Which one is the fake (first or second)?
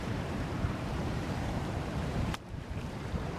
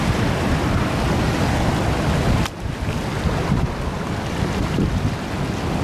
first